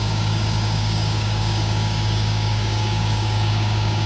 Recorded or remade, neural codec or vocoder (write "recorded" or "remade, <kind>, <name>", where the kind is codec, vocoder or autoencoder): remade, codec, DAC